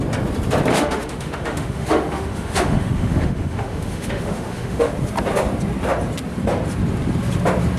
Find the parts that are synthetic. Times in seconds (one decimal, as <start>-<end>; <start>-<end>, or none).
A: 0.7-4.9